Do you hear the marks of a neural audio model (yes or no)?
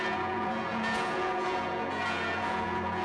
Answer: yes